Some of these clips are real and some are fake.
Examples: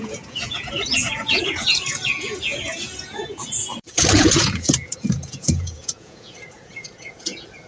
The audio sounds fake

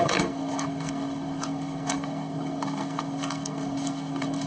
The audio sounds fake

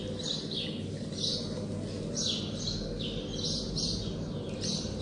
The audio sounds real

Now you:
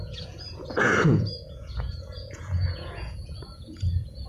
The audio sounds fake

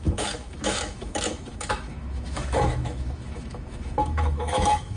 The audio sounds fake